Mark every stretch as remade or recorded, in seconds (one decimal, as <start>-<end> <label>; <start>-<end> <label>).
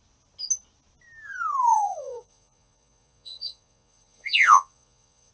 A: 0.0-1.7 recorded; 1.7-5.3 remade